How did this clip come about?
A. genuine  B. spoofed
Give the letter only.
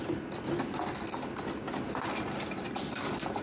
A